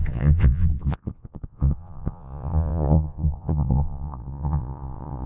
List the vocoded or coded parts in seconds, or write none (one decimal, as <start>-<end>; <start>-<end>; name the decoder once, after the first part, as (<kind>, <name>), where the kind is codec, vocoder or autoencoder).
0.0-5.3 (vocoder, Vocos)